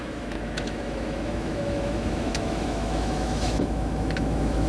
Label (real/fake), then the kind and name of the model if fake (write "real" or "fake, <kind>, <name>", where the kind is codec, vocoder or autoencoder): fake, autoencoder, DAC-VAE